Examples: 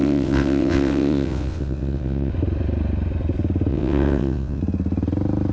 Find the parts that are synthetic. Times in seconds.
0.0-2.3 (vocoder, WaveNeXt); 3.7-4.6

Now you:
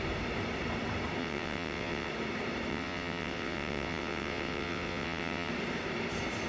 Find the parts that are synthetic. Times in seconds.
1.2-2.1 (vocoder, WaveNeXt); 2.7-5.5

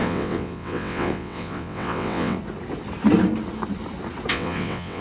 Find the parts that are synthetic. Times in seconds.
0.0-2.4 (vocoder, WaveNeXt); 4.3-5.0

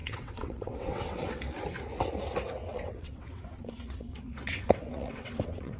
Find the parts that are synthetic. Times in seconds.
0.0-1.4 (vocoder, WaveNeXt); 2.7-5.8